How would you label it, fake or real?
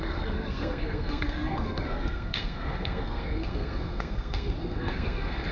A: fake